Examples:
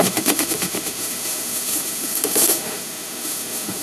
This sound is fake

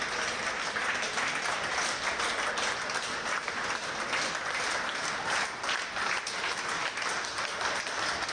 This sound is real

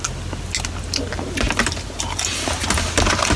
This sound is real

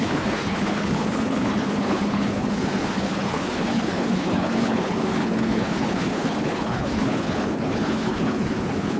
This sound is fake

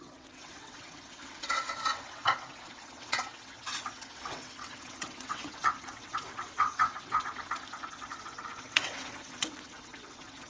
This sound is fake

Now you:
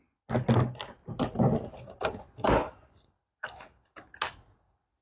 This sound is real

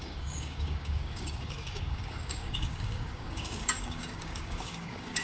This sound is fake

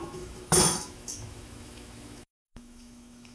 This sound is fake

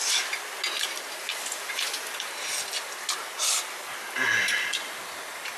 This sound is real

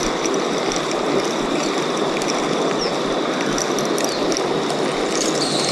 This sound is real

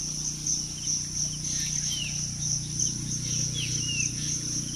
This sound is real